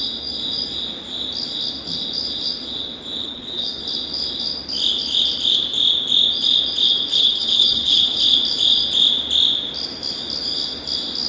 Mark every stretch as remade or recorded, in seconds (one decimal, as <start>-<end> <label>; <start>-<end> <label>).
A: 0.0-3.2 recorded; 3.2-3.8 remade; 3.8-7.1 recorded; 7.1-8.2 remade; 8.2-11.3 recorded